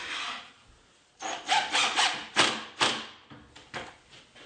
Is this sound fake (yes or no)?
no